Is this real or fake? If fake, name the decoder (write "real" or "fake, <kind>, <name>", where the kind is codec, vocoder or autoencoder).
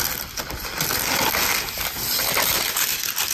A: real